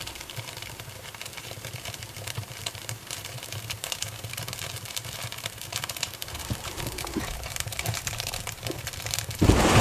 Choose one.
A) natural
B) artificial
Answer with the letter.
B